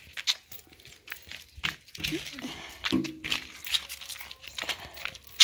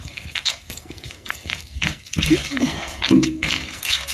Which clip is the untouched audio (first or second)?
first